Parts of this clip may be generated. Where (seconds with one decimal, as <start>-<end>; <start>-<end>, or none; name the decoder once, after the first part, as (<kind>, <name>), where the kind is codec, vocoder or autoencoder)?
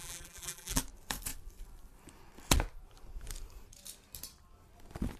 0.0-0.8 (vocoder, BigVGAN v2)